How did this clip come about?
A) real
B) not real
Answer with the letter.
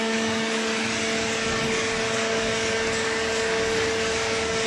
B